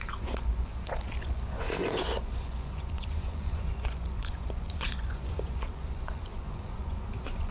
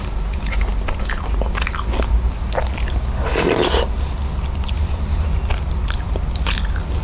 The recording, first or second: second